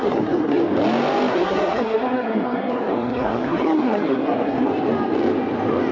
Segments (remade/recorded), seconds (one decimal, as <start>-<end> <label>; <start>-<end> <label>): 0.0-0.6 remade; 0.6-1.3 recorded; 1.3-4.7 remade; 4.7-5.9 recorded